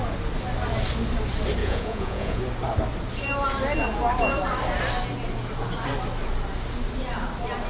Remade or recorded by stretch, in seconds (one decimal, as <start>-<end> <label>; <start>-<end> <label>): 0.0-1.6 recorded; 1.6-2.4 remade; 2.4-7.7 recorded